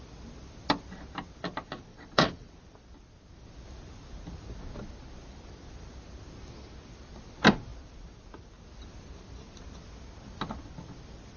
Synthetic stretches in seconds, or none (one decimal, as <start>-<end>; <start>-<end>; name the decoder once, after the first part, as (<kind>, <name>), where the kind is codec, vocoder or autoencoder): 1.9-2.5 (vocoder, WaveNeXt)